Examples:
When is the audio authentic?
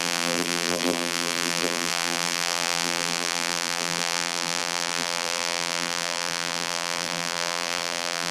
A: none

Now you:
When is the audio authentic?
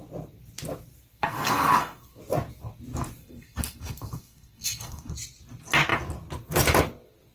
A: 0.0-1.1; 2.2-3.2; 5.1-7.3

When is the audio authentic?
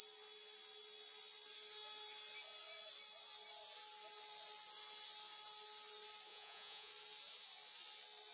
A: 0.0-6.3; 6.9-8.3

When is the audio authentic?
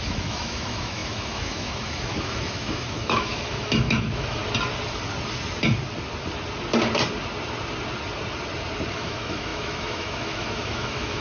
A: 4.4-8.9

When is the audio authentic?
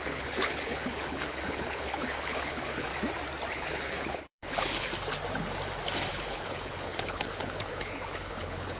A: 2.9-3.5; 4.9-6.1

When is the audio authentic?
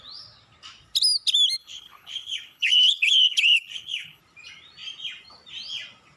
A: 0.0-1.6; 4.2-6.2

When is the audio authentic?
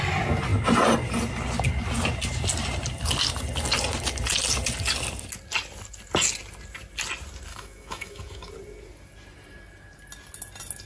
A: 0.0-7.5; 8.5-10.9